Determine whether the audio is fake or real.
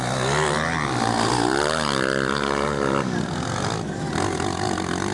real